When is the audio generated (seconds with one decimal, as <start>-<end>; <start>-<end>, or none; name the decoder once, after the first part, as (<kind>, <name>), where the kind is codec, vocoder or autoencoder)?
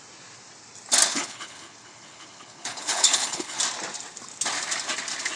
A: 1.1-3.6 (codec, HILCodec)